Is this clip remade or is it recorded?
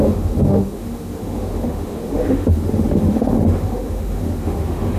remade